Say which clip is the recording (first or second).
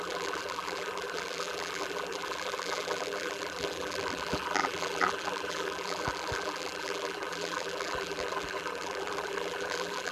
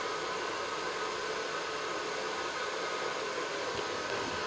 second